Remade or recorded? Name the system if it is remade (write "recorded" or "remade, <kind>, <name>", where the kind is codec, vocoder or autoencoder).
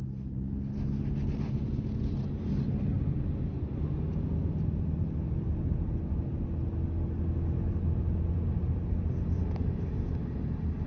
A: recorded